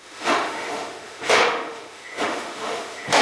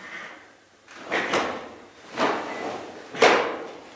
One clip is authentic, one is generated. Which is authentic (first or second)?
second